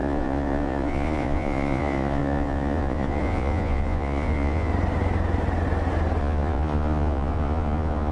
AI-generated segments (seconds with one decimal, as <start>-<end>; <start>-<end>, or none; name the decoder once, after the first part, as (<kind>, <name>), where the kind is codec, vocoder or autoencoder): 0.0-4.7 (vocoder, Vocos); 6.2-8.1